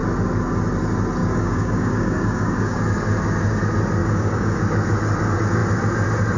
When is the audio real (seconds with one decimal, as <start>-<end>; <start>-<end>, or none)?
0.0-1.2; 2.8-4.0; 4.6-6.4